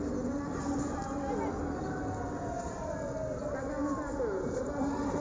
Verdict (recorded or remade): recorded